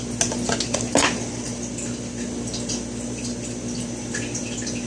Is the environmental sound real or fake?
real